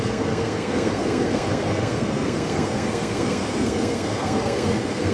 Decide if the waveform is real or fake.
fake